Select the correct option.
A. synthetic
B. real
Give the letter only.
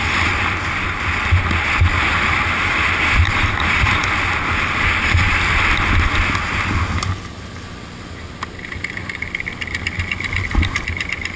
B